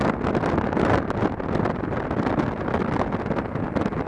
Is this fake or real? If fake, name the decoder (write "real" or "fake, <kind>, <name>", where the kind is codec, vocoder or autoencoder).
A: real